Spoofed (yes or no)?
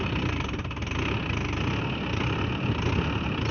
no